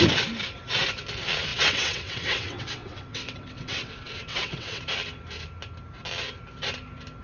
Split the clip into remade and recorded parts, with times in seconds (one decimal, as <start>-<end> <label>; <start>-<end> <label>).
0.0-1.5 recorded; 1.5-4.8 remade; 4.8-7.2 recorded